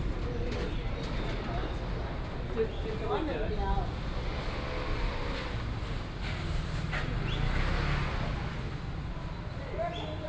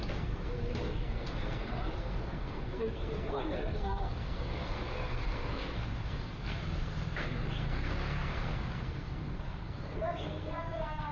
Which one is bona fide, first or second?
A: first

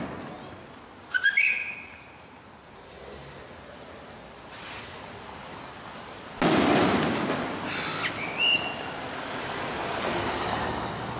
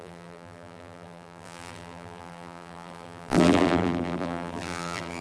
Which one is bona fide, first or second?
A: first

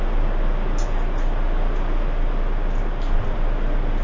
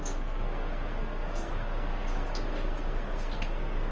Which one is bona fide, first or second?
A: first